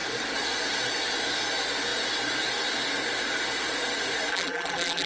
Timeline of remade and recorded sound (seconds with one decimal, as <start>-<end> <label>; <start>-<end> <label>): 0.0-4.3 recorded; 4.3-5.1 remade